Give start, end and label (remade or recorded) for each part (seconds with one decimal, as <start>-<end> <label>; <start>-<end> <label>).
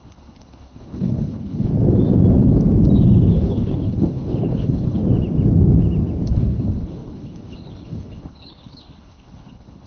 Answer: 0.0-1.7 remade; 1.7-3.3 recorded; 3.3-5.0 remade; 5.0-6.3 recorded; 6.3-9.9 remade